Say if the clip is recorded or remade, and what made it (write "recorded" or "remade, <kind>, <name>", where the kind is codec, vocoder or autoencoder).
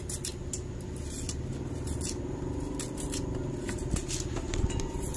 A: recorded